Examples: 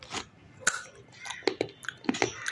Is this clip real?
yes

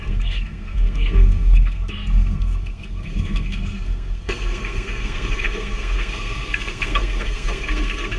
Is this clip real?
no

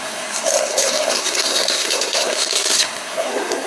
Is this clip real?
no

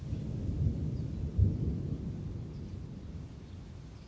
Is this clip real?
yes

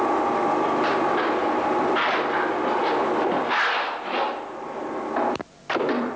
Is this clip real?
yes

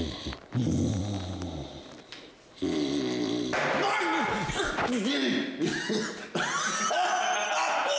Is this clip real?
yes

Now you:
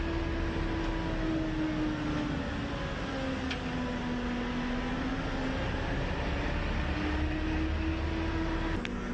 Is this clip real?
yes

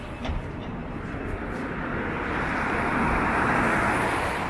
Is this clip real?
yes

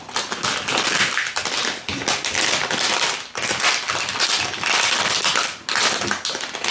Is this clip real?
yes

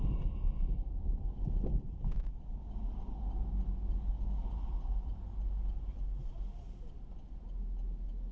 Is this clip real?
yes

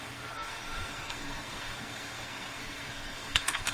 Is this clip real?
no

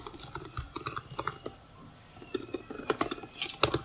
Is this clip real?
yes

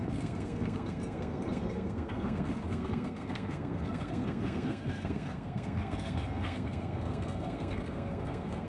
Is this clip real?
no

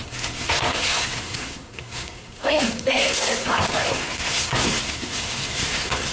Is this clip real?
no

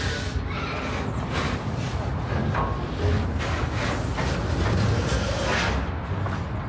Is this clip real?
yes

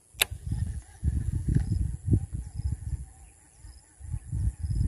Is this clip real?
yes